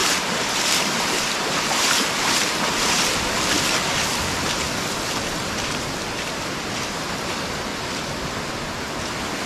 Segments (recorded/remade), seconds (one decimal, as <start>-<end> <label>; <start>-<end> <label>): 0.0-2.2 remade; 2.2-9.5 recorded